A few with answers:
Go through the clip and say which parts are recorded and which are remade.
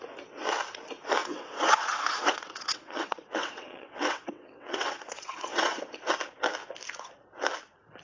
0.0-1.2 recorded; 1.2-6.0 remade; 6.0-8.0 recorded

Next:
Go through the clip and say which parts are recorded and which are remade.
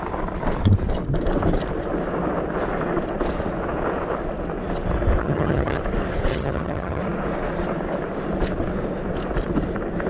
0.0-5.2 recorded; 5.2-5.8 remade; 5.8-6.3 recorded; 6.3-7.0 remade; 7.0-10.1 recorded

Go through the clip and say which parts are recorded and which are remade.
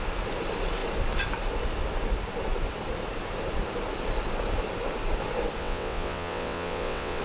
0.0-5.6 recorded; 5.6-7.2 remade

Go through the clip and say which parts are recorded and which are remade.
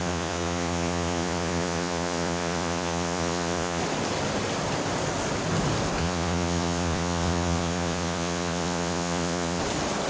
0.0-3.8 remade; 3.8-6.0 recorded; 6.0-9.6 remade; 9.6-10.1 recorded